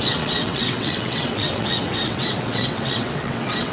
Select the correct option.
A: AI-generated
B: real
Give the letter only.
A